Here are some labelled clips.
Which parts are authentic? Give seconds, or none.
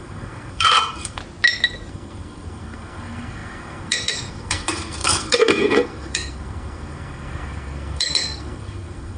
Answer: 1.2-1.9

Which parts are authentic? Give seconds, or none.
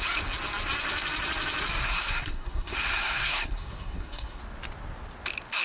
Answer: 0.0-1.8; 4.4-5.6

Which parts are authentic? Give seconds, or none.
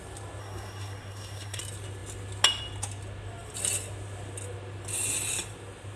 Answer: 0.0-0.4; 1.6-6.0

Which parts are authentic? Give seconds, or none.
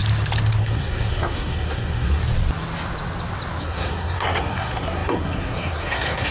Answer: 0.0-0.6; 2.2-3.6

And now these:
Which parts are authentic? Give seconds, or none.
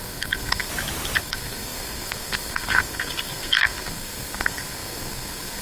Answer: 0.7-1.2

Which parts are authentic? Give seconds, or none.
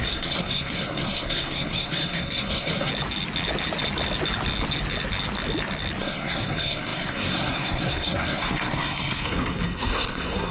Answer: 2.9-6.0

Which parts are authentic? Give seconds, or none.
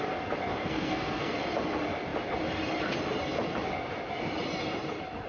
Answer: 0.0-0.5; 1.3-5.3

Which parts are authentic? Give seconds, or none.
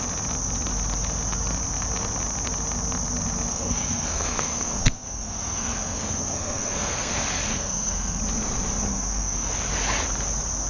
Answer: 0.0-3.5; 7.1-7.5; 8.2-8.9; 9.5-10.7